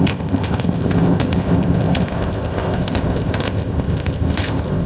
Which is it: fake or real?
fake